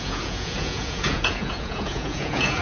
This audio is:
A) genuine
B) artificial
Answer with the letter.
B